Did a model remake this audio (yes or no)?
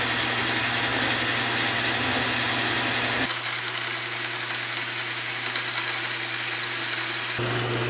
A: no